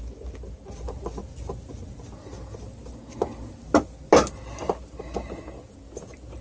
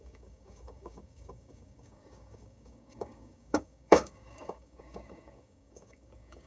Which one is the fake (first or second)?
second